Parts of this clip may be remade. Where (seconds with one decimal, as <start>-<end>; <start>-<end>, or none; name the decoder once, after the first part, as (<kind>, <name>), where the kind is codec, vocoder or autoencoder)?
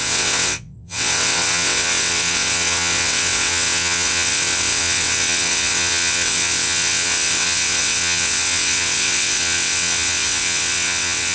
0.0-11.3 (vocoder, WaveNeXt)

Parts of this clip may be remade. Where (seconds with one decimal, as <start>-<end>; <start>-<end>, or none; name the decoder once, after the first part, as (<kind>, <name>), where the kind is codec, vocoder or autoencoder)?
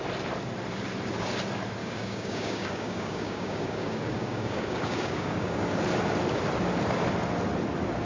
1.8-5.6 (codec, DAC)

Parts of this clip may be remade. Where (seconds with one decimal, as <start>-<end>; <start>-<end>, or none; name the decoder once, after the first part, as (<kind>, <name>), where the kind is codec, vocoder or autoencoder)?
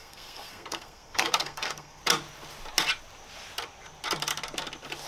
0.0-2.0 (codec, SNAC)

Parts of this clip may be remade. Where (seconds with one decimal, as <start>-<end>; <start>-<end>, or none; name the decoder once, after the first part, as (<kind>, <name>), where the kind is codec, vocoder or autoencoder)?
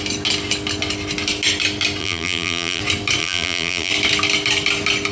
2.0-2.8 (vocoder, BigVGAN v2); 3.2-3.9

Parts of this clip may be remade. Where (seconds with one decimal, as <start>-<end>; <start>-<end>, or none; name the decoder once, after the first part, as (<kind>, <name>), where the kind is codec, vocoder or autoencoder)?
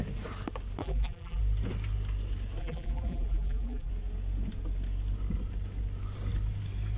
0.8-1.4 (vocoder, BigVGAN v2); 2.6-3.9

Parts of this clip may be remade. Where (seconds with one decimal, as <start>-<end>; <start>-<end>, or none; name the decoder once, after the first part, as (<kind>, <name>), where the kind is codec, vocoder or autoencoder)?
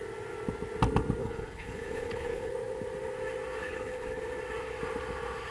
1.2-2.5 (codec, HILCodec); 3.6-4.2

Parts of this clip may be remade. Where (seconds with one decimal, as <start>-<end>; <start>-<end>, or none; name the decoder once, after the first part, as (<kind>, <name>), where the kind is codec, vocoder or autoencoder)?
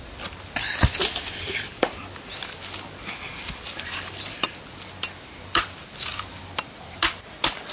none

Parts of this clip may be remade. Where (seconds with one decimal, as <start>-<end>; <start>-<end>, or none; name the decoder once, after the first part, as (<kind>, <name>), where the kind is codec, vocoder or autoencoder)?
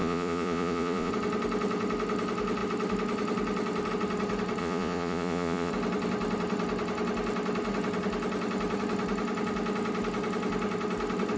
0.0-1.1 (vocoder, Vocos); 4.6-5.7